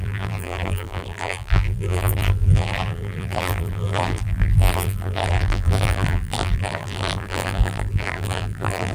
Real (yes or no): no